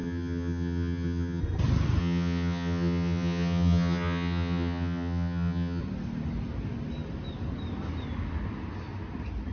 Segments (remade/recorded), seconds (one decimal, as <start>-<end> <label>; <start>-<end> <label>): 0.0-1.4 remade; 1.4-2.0 recorded; 2.0-5.8 remade; 5.8-9.5 recorded